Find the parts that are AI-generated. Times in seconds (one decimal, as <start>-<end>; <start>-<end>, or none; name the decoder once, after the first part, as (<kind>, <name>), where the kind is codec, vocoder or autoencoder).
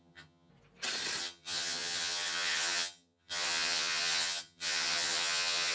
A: 0.0-0.5 (vocoder, HiFi-GAN); 1.2-5.7